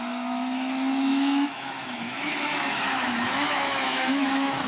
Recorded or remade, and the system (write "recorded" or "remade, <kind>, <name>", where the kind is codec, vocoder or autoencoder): remade, autoencoder, DAC-VAE